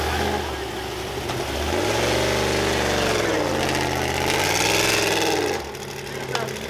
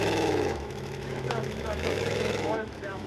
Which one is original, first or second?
first